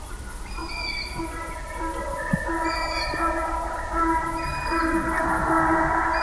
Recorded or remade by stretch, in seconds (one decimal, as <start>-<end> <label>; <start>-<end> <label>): 0.0-6.2 recorded